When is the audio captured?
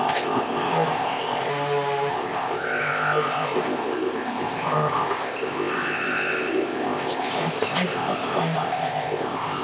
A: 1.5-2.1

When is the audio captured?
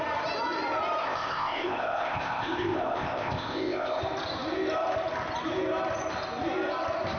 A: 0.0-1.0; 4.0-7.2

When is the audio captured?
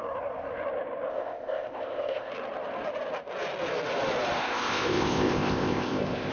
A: 0.0-1.1; 2.3-4.4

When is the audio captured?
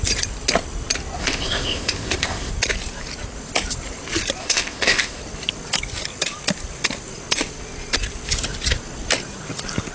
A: 0.0-1.2; 2.5-4.4; 5.2-9.9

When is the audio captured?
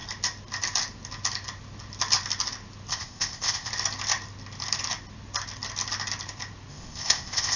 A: 0.0-2.9; 3.7-6.7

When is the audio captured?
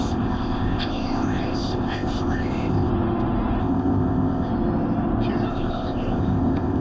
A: 2.9-3.6; 4.5-5.5